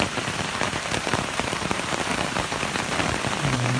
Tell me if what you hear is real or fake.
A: fake